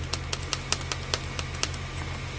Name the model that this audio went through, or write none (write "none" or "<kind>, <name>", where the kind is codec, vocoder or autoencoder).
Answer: none